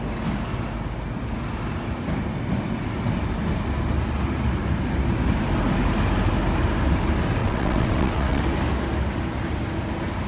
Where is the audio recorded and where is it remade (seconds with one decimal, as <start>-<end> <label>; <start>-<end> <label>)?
0.0-7.4 recorded; 7.4-8.4 remade; 8.4-10.3 recorded